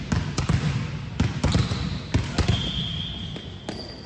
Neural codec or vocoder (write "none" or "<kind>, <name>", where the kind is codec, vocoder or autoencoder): none